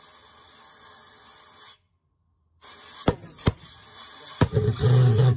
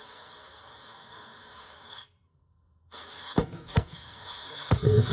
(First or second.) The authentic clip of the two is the first